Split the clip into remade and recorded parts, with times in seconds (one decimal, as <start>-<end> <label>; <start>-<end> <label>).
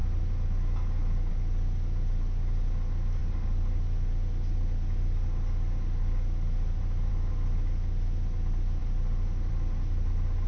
0.0-10.5 recorded